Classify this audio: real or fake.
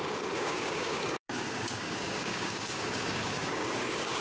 fake